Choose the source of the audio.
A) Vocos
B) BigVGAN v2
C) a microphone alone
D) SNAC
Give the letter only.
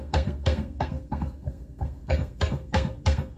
D